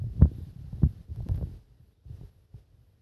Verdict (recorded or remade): recorded